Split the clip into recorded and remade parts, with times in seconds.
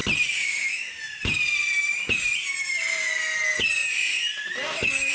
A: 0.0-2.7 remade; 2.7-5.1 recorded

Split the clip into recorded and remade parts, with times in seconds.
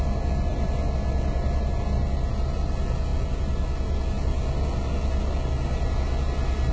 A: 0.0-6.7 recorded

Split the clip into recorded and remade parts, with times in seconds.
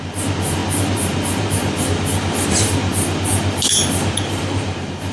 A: 0.0-5.1 remade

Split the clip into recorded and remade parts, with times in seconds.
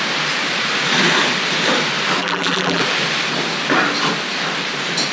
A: 0.0-2.2 recorded; 2.2-2.8 remade; 2.8-5.1 recorded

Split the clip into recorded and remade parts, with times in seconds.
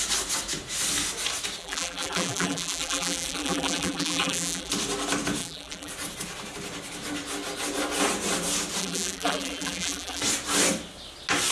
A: 0.0-1.6 recorded; 1.6-4.7 remade; 4.7-5.4 recorded; 5.4-5.9 remade; 5.9-8.8 recorded; 8.8-10.2 remade; 10.2-11.5 recorded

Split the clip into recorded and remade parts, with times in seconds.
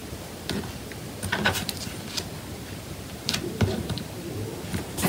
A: 0.0-3.1 recorded; 3.1-5.1 remade